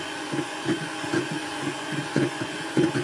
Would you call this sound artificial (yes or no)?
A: yes